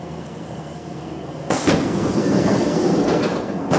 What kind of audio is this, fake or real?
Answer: fake